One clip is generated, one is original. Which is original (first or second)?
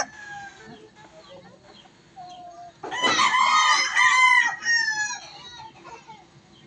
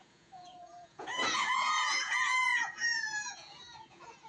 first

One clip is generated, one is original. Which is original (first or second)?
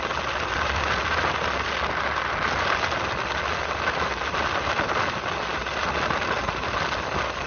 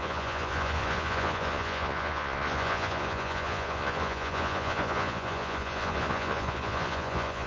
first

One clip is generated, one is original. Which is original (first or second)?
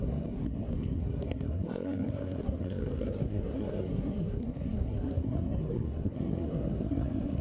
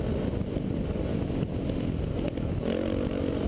second